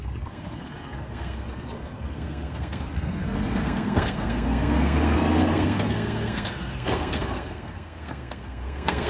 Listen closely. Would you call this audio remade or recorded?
remade